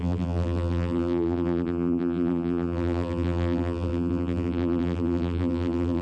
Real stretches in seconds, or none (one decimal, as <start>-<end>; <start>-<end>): none

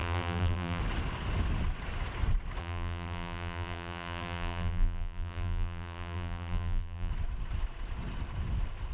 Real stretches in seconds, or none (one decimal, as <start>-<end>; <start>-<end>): 0.8-2.6; 7.1-8.9

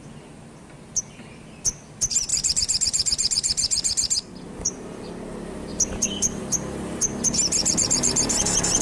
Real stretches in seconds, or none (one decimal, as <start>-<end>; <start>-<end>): 0.0-2.3; 5.1-5.7; 6.4-7.6

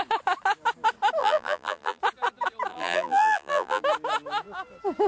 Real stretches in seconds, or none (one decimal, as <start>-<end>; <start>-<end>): 0.0-1.2; 2.0-2.7; 3.8-5.1

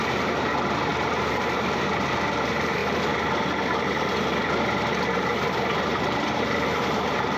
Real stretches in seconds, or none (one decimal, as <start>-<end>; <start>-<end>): 0.0-5.9

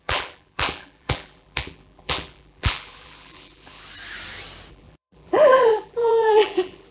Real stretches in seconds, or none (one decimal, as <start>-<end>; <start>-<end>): 3.8-4.7

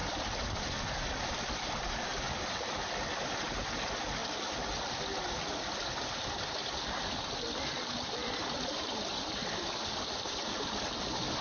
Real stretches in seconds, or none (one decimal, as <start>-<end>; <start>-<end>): 1.3-8.2; 10.4-11.4